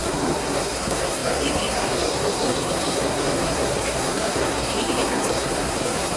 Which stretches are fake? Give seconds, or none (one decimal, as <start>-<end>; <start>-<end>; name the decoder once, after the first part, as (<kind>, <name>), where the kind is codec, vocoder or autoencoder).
0.0-6.2 (codec, SNAC)